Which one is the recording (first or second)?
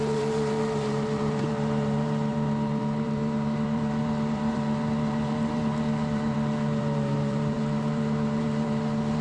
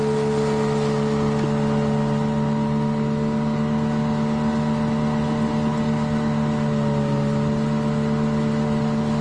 second